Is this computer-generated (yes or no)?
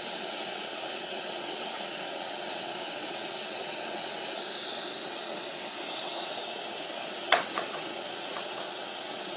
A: yes